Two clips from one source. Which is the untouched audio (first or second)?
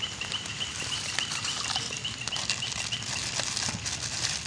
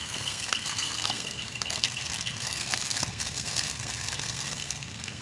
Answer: first